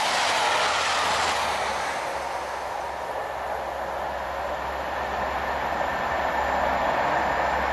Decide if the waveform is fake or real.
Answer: real